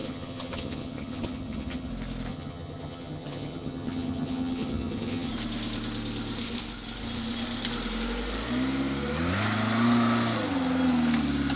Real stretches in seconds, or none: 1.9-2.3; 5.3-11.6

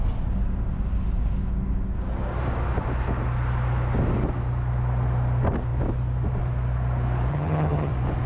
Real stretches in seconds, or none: 0.0-7.3; 7.9-8.3

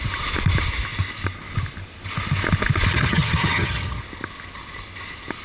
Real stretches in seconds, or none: 0.0-2.9; 4.0-5.4

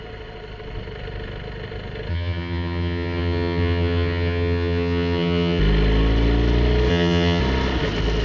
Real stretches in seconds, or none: 0.0-2.1; 5.6-6.9; 7.4-8.2

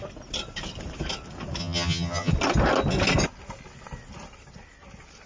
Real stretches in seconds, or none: 0.0-1.6; 2.3-5.3

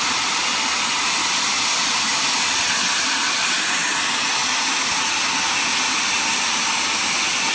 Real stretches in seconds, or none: 0.0-7.5